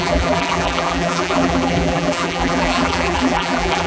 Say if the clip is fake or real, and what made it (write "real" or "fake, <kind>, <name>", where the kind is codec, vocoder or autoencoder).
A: fake, vocoder, BigVGAN v2